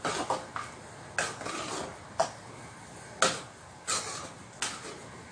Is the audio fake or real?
real